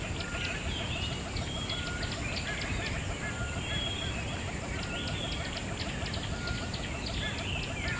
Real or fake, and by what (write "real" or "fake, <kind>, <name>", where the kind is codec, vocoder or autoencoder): real